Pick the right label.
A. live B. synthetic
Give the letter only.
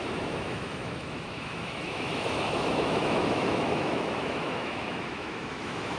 B